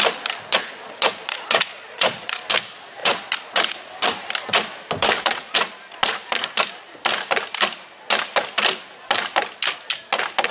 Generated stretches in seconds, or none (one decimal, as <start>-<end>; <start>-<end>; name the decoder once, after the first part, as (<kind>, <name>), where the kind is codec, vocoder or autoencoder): 0.5-2.4 (vocoder, Vocos); 3.0-3.9; 5.0-5.6